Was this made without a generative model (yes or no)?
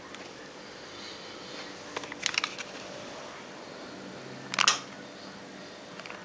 yes